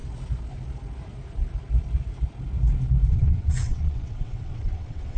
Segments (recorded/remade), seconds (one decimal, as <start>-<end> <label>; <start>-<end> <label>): 0.0-3.1 recorded; 3.1-5.2 remade